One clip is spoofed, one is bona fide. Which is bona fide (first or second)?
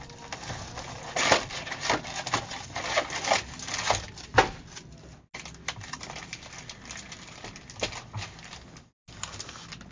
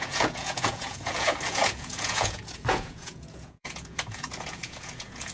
first